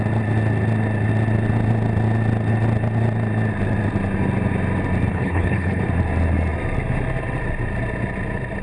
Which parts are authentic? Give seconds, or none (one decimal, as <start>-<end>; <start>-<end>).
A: 0.0-5.1; 5.8-8.6